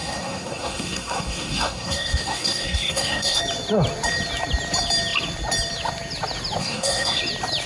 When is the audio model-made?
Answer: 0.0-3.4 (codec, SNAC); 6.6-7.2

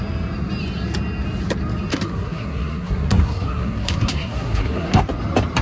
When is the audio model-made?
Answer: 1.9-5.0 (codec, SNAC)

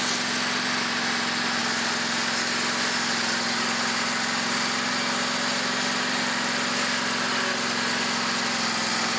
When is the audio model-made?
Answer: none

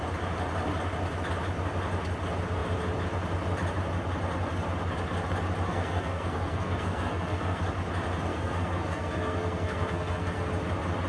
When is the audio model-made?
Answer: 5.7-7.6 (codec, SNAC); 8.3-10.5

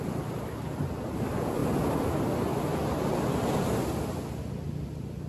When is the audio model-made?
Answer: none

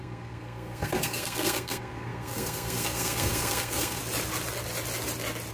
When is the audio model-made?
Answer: 0.0-4.0 (codec, SNAC)

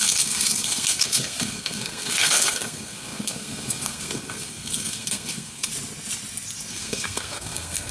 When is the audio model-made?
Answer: 0.0-5.7 (codec, SNAC); 6.7-7.9